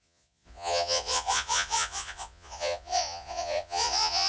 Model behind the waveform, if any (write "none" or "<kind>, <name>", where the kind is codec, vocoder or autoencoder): vocoder, Vocos